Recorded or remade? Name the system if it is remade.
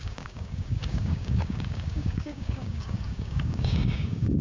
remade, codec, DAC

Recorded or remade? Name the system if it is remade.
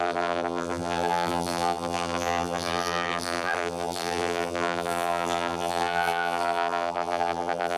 remade, vocoder, BigVGAN v2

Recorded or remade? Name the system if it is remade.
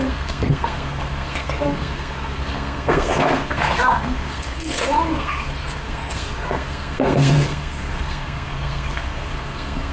remade, codec, SNAC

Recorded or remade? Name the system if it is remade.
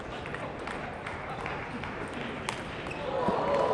recorded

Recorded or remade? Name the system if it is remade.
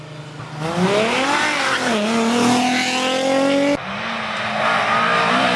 recorded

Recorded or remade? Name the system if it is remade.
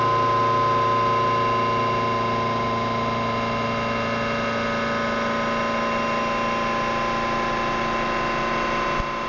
recorded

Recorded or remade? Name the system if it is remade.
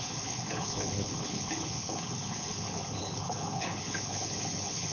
remade, codec, HILCodec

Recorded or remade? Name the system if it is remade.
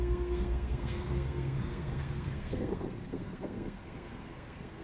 remade, codec, SNAC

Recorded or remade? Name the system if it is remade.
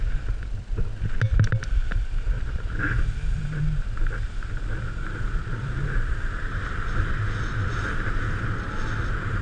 recorded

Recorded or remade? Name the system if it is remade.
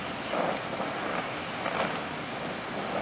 recorded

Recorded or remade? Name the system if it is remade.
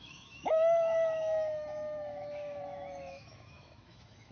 remade, autoencoder, DAC-VAE